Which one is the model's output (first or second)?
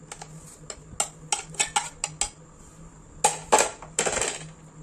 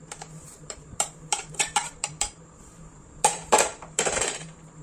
second